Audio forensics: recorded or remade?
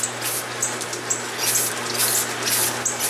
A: recorded